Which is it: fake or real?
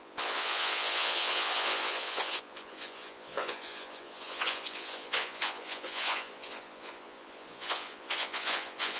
fake